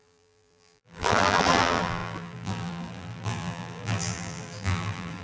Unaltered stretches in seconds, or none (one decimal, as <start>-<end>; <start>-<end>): none

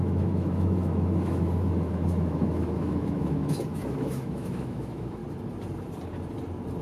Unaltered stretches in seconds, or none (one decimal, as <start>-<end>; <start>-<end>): 5.2-6.8